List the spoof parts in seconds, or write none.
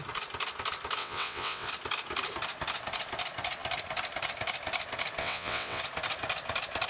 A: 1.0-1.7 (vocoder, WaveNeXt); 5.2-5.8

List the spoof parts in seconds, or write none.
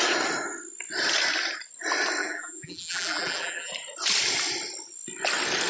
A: 2.2-3.7 (vocoder, BigVGAN v2)